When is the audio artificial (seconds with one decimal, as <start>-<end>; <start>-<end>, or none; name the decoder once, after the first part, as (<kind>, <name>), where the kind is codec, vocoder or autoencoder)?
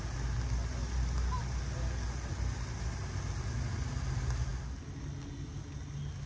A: none